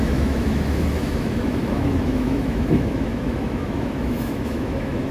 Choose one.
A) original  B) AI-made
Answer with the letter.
B